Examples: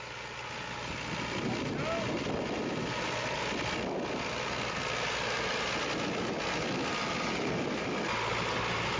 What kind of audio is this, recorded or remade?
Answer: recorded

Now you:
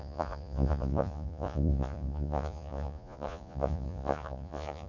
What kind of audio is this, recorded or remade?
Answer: remade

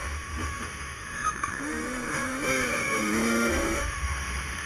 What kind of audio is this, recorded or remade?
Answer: remade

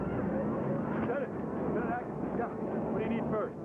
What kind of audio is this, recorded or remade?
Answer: recorded